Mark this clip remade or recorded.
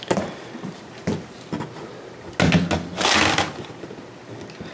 recorded